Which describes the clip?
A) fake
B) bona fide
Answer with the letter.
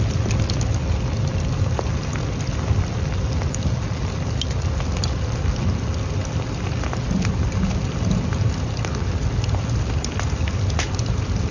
B